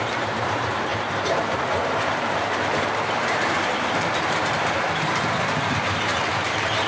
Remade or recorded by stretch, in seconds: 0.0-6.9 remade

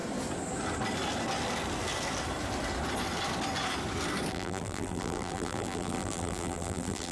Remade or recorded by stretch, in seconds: 0.0-4.3 recorded; 4.3-7.1 remade